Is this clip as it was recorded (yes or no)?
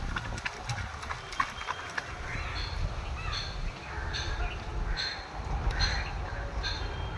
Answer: yes